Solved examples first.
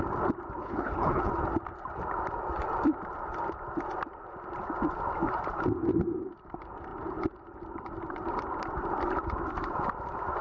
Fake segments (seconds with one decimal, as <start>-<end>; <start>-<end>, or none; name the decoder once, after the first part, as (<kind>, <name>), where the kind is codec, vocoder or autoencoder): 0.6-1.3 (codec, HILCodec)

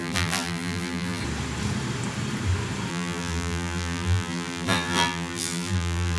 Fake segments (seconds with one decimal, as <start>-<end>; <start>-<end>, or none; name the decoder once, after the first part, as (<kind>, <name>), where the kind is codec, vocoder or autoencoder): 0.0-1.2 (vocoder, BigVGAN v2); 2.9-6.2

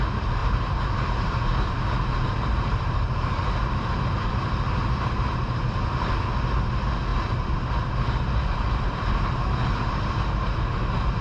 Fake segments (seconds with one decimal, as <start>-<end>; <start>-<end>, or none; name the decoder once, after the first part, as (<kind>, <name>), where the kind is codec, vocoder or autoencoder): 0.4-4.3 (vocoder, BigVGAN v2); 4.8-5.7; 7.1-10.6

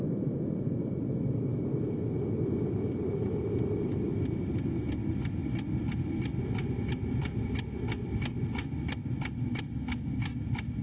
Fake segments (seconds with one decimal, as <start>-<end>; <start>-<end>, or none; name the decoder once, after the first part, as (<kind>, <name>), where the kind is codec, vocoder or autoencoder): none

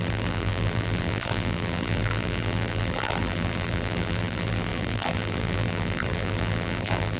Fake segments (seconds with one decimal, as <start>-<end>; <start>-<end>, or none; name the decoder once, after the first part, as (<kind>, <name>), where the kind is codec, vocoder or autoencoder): 0.0-7.2 (vocoder, BigVGAN v2)